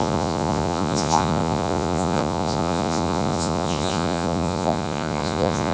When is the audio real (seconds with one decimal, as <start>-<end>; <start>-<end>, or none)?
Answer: none